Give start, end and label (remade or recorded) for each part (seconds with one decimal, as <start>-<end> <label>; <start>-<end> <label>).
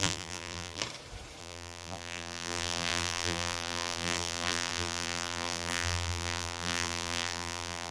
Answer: 0.0-0.8 remade; 0.8-1.4 recorded; 1.4-7.9 remade